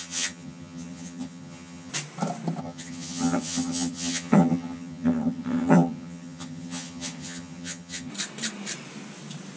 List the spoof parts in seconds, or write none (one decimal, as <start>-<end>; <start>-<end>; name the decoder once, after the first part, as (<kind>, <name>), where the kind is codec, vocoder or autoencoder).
0.0-1.9 (vocoder, HiFi-GAN); 2.6-8.1